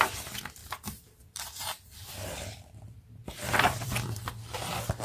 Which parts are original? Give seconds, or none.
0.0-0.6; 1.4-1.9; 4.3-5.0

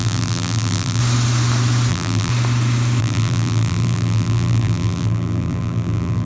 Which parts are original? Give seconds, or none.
1.0-1.9; 2.3-3.0

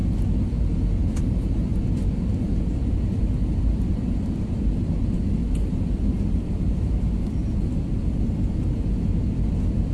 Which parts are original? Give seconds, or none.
0.0-5.4; 7.3-9.9